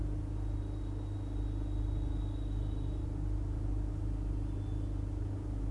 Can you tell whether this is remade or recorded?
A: recorded